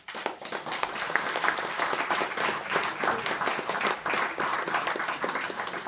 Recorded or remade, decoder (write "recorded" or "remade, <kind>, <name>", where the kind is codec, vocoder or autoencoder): recorded